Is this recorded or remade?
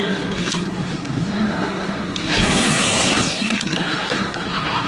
remade